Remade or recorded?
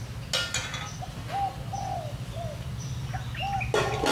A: recorded